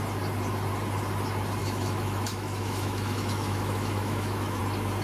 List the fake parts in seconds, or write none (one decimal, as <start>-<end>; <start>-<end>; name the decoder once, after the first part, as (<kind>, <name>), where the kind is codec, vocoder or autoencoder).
1.6-4.6 (autoencoder, DAC-VAE)